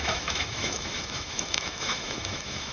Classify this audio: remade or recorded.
remade